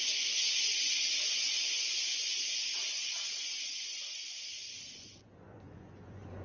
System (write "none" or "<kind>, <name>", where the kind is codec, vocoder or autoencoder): vocoder, Vocos